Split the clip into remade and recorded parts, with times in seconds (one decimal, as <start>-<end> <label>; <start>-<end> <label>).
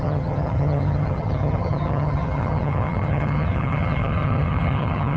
0.0-5.2 remade